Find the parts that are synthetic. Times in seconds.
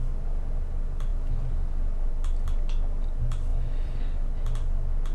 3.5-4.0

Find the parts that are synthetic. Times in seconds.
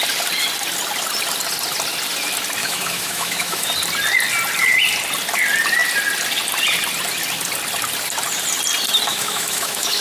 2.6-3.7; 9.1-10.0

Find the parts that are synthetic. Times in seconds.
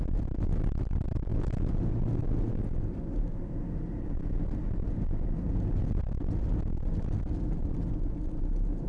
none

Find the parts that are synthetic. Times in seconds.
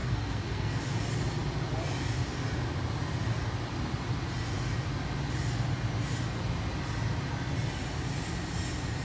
0.0-0.8